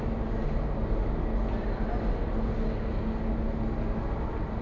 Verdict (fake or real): real